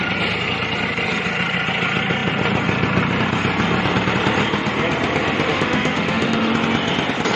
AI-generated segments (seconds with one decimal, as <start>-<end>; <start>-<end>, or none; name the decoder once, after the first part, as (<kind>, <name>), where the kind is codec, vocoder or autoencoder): 5.5-6.5 (autoencoder, DAC-VAE)